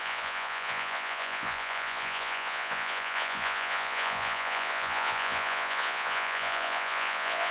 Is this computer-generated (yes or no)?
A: yes